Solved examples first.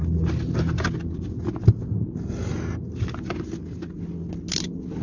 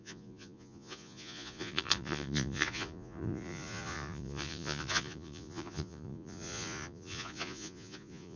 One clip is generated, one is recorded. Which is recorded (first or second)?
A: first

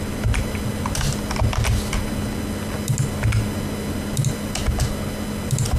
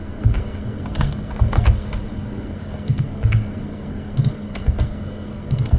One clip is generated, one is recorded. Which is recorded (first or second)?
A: first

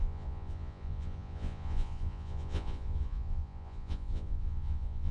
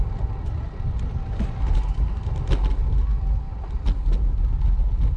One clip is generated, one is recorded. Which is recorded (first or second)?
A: second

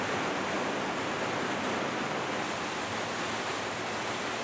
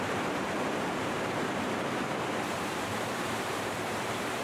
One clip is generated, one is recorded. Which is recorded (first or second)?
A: first